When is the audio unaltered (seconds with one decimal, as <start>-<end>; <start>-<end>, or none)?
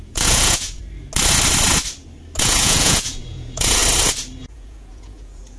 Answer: 0.8-2.4; 3.8-4.4